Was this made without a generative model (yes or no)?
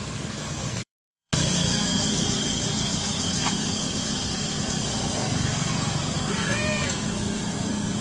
no